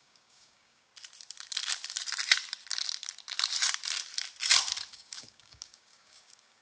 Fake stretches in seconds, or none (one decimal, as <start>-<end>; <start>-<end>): 0.0-0.9; 4.9-6.6